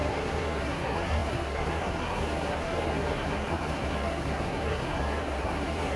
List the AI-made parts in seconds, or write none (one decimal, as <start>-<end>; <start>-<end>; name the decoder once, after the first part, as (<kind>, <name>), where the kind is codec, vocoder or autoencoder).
0.0-6.0 (codec, SNAC)

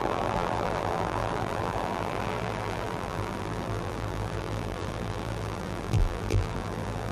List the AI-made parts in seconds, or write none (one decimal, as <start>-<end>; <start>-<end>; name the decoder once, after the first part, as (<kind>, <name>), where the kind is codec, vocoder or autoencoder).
0.0-7.1 (vocoder, BigVGAN v2)

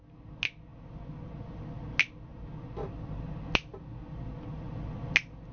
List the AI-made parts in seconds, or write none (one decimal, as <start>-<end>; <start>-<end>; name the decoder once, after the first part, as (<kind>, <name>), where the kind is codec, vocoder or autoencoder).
none